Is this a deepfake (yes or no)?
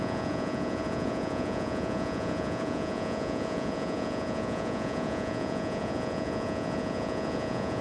yes